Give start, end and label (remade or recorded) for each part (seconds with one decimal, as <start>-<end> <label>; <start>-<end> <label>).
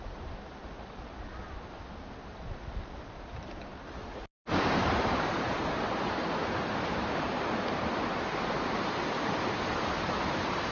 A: 0.0-2.6 remade; 2.6-3.4 recorded; 3.4-10.7 remade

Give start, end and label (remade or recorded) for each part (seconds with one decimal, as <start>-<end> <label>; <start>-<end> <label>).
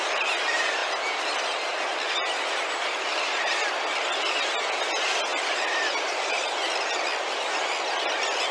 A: 0.0-8.5 recorded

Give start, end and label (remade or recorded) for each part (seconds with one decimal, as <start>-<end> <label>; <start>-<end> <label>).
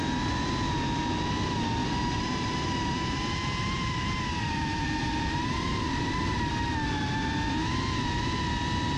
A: 0.0-1.8 recorded; 1.8-6.5 remade; 6.5-7.6 recorded; 7.6-8.4 remade; 8.4-9.0 recorded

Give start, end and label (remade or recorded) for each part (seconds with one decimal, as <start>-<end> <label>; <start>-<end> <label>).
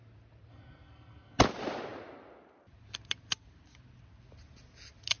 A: 0.0-0.5 recorded; 0.5-1.4 remade; 1.4-5.2 recorded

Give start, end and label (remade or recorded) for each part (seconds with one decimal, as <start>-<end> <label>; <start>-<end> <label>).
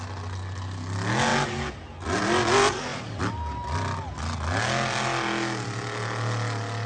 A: 0.0-6.9 recorded